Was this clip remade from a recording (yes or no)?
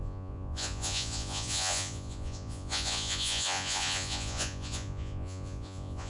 yes